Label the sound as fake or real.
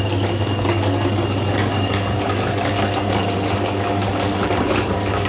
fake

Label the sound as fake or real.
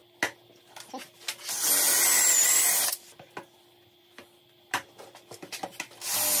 real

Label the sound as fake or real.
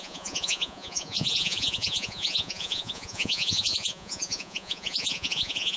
fake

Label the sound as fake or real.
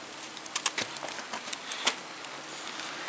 real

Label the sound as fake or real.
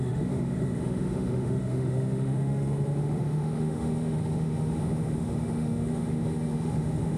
fake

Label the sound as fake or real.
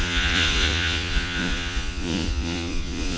fake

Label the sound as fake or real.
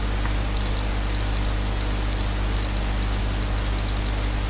real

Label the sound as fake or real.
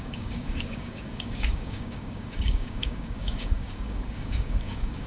fake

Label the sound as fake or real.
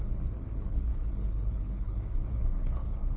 fake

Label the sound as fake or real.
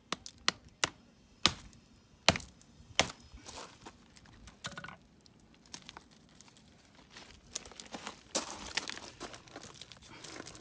real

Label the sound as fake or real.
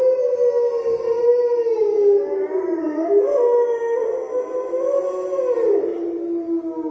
real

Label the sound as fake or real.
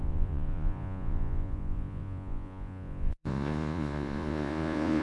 fake